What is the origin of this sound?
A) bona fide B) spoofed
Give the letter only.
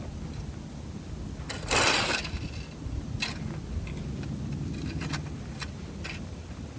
A